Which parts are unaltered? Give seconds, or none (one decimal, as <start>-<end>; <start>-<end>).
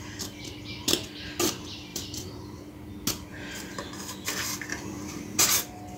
0.0-1.9; 2.9-3.3; 4.0-4.7; 5.4-6.0